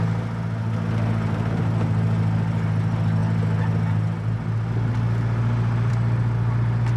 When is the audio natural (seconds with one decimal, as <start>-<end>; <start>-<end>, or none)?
0.0-7.0